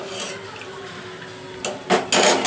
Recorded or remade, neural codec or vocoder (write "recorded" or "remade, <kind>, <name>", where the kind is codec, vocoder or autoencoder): recorded